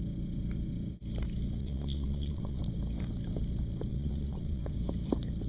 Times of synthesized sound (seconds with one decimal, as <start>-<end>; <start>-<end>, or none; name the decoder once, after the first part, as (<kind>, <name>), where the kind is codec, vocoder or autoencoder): 1.6-2.6 (vocoder, WaveNeXt); 3.9-4.7